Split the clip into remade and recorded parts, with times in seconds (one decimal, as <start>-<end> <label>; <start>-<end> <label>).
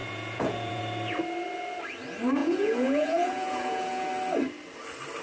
0.0-0.8 remade; 0.8-2.4 recorded; 2.4-4.1 remade; 4.1-5.2 recorded